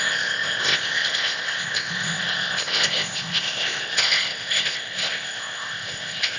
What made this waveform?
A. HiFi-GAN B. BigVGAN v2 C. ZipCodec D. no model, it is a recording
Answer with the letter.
C